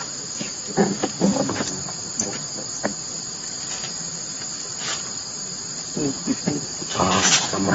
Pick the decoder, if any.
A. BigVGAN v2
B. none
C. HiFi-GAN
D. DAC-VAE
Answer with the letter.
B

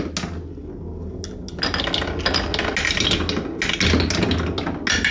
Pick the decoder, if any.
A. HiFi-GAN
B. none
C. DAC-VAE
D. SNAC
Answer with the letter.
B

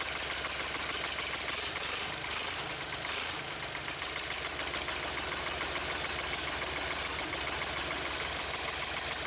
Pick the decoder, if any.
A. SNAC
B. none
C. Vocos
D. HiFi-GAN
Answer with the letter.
B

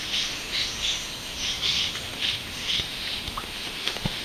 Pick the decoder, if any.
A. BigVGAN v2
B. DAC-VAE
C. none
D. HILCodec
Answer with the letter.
B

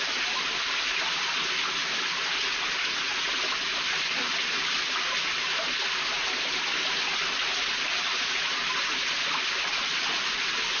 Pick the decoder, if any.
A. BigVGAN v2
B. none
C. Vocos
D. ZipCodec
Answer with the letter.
B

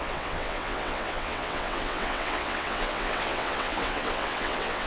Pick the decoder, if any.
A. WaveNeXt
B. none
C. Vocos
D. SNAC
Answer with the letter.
A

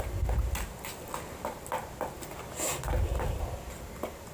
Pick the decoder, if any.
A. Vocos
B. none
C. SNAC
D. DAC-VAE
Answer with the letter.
B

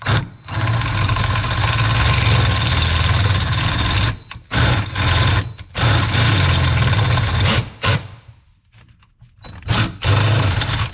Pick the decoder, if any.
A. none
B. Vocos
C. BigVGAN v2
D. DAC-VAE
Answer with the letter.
A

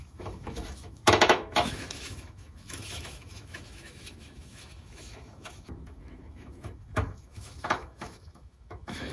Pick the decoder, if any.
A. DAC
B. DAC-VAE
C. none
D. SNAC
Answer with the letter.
B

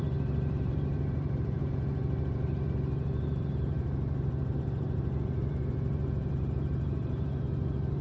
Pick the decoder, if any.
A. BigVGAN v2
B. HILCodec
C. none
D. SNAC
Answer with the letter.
A